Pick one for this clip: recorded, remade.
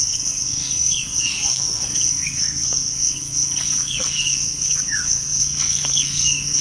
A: remade